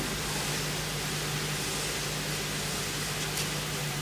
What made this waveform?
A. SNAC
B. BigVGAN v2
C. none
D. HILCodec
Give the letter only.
C